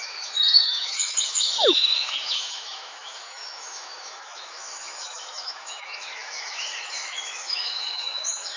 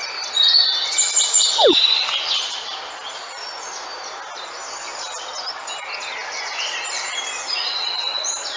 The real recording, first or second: second